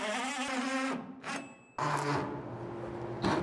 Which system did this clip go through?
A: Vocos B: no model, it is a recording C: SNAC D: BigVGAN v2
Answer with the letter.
B